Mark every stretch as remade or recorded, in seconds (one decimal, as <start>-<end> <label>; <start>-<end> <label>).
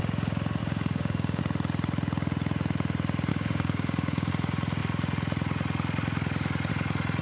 0.0-0.6 recorded; 0.6-1.4 remade; 1.4-3.3 recorded; 3.3-4.3 remade; 4.3-7.2 recorded